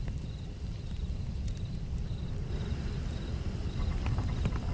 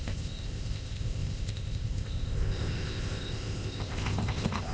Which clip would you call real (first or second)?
first